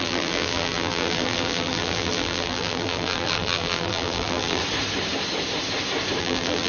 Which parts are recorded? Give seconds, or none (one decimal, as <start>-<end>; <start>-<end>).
4.6-6.2